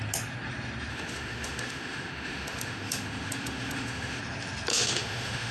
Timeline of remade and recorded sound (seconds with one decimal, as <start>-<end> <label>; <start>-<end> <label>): 0.0-0.9 recorded; 0.9-4.2 remade; 4.2-4.7 recorded; 4.7-5.5 remade